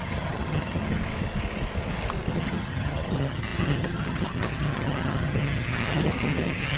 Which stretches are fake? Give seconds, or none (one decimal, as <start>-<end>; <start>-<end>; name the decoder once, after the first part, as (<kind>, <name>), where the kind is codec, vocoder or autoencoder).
0.0-1.0 (vocoder, HiFi-GAN); 2.3-6.8